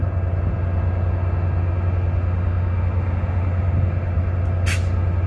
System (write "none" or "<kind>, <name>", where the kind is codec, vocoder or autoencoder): none